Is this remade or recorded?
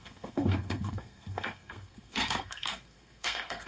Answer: remade